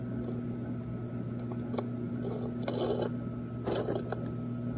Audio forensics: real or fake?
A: real